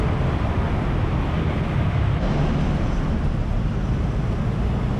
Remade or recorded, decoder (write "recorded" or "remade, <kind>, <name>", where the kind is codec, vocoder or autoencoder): recorded